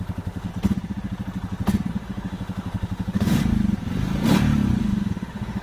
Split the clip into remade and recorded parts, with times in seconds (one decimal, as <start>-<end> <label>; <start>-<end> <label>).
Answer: 0.0-0.5 remade; 0.5-1.9 recorded; 1.9-3.4 remade; 3.4-4.8 recorded; 4.8-5.6 remade